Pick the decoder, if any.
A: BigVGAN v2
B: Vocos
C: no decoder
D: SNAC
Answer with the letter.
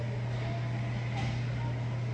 C